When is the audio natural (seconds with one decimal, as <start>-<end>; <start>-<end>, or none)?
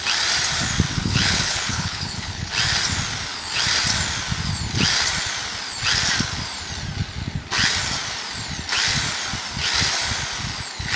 0.0-1.0; 2.5-11.0